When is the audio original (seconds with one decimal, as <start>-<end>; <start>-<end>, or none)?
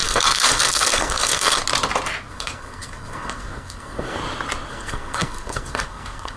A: 1.6-2.3; 4.2-4.7